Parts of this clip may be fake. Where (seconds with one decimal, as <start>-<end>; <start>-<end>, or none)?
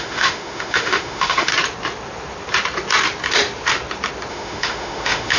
0.0-1.5; 4.3-5.4